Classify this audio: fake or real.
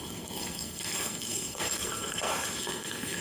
fake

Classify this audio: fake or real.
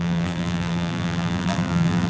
fake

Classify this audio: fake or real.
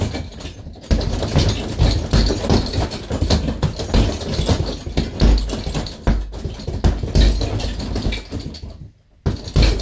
real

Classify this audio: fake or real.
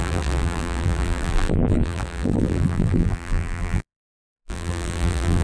fake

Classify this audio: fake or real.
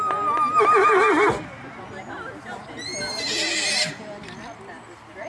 real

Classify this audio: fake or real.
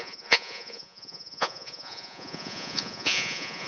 fake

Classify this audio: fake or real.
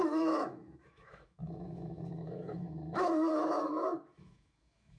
fake